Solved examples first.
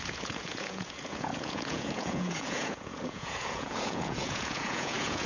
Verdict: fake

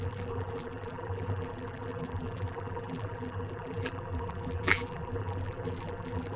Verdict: fake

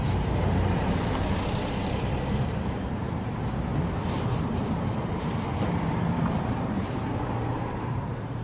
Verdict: fake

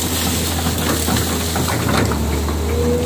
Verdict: real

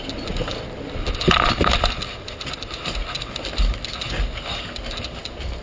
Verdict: real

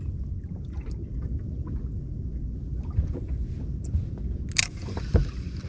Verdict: real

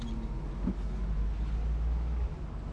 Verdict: real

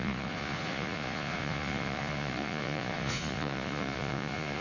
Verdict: fake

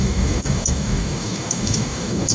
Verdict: fake